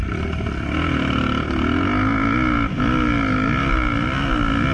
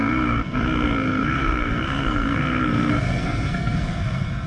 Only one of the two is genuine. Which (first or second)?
first